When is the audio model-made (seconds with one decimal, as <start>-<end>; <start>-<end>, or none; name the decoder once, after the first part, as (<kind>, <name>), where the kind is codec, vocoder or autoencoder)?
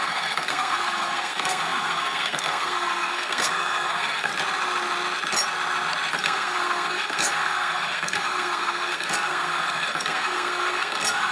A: 0.0-4.3 (codec, SNAC); 6.1-11.3